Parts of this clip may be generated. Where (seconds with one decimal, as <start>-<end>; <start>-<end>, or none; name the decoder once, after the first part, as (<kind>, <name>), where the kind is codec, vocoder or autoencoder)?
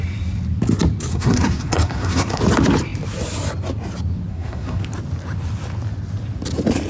1.1-2.4 (codec, SNAC); 4.3-4.8